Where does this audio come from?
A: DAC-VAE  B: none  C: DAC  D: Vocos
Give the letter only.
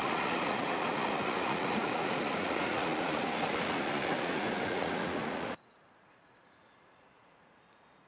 D